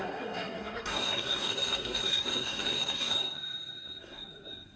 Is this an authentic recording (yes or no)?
no